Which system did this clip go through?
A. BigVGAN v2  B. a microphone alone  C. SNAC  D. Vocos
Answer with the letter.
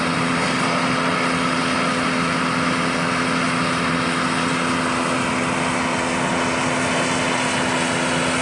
B